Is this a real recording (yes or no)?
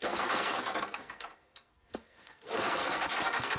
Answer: no